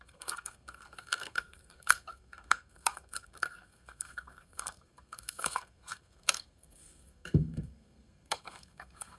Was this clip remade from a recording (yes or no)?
yes